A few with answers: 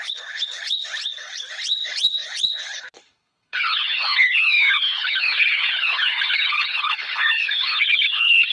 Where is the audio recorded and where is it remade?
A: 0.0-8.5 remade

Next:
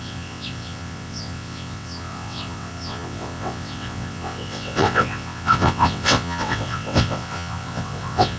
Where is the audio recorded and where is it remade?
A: 0.0-8.4 remade

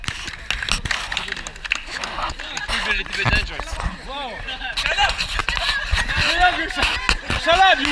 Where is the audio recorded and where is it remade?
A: 0.0-7.9 recorded

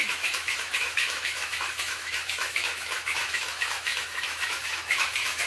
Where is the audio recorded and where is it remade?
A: 0.0-5.5 remade

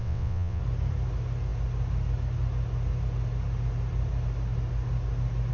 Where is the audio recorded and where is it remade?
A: 0.0-0.6 remade; 0.6-5.5 recorded

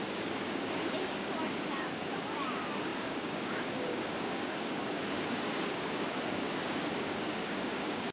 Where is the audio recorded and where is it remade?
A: 0.0-8.1 remade

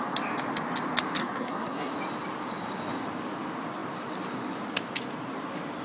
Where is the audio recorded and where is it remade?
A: 0.0-1.2 recorded; 1.2-1.9 remade; 1.9-5.8 recorded